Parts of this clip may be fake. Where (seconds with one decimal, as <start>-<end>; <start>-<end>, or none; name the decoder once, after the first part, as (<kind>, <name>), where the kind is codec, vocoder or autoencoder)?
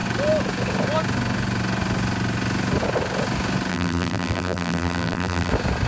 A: 3.7-5.5 (vocoder, BigVGAN v2)